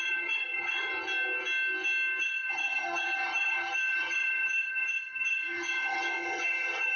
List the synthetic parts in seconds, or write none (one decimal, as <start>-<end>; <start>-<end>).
0.0-0.9; 2.2-7.0